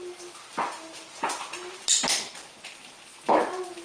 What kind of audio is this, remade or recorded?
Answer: recorded